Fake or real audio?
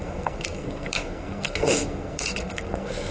fake